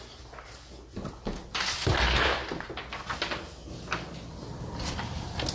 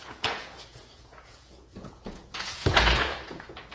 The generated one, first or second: second